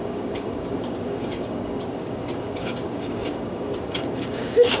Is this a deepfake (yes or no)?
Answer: yes